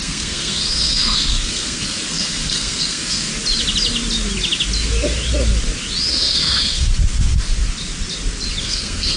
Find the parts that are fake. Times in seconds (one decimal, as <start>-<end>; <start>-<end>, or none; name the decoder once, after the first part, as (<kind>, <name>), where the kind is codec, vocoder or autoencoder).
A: 0.0-3.3 (codec, SNAC); 6.1-6.9; 8.6-9.2